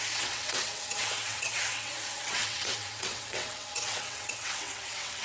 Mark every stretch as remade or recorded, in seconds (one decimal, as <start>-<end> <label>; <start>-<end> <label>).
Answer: 0.0-5.2 remade